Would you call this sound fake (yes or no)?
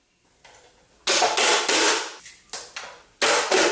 no